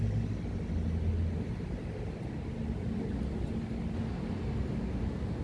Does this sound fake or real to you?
real